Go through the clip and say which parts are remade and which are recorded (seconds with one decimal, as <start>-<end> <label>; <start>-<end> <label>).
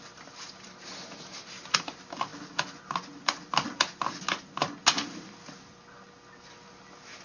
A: 0.0-7.2 recorded